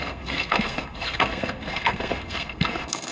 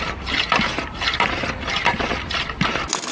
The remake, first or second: first